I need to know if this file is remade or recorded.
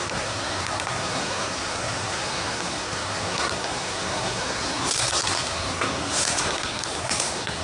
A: remade